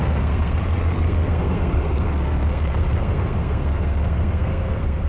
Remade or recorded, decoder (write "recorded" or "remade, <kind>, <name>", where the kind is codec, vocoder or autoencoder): remade, codec, SNAC